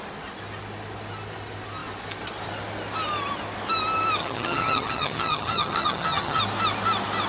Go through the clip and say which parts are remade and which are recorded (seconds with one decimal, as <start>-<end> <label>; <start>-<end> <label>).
0.0-4.2 recorded; 4.2-6.4 remade; 6.4-7.3 recorded